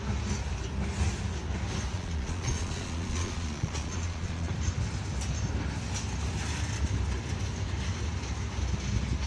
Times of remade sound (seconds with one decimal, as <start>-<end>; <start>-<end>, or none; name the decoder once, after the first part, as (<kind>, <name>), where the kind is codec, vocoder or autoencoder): 1.9-4.5 (vocoder, Vocos)